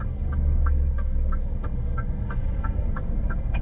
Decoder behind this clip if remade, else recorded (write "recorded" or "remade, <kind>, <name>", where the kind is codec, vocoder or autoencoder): remade, codec, SNAC